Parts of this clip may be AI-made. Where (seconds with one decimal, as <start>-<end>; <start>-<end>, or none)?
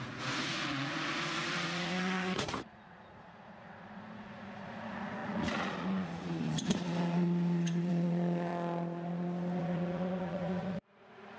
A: 0.0-8.5; 9.6-11.4